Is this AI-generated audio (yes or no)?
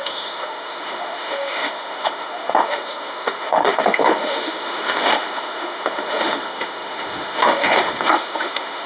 yes